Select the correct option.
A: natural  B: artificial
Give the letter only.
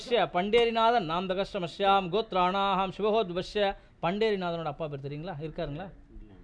A